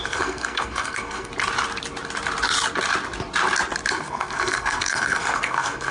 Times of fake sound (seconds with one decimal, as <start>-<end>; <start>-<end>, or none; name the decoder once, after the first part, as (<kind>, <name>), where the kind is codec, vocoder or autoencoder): 0.0-1.3 (codec, SNAC); 3.9-5.9